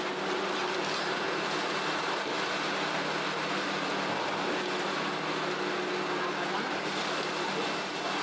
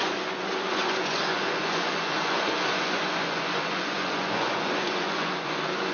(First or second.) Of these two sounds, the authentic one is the first